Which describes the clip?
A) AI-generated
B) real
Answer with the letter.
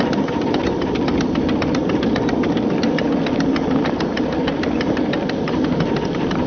B